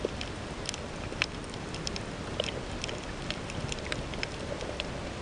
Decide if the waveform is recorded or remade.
recorded